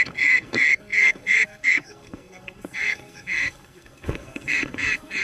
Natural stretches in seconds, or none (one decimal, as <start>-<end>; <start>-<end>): none